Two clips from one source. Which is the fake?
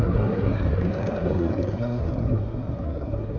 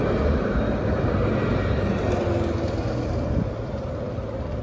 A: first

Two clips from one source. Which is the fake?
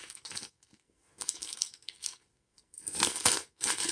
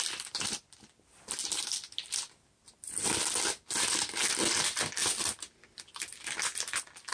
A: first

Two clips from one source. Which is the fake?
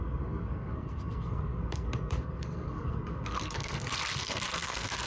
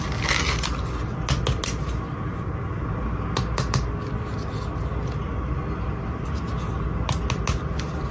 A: first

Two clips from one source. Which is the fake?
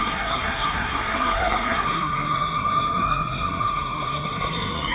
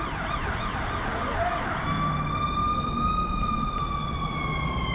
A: first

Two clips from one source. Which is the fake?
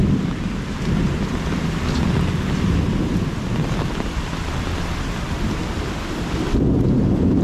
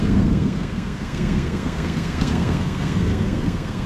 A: second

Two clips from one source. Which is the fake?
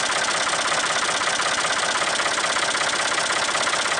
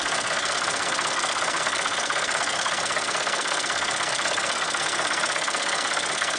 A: second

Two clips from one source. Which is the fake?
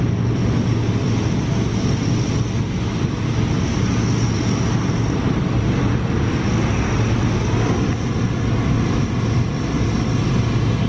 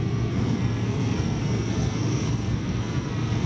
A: second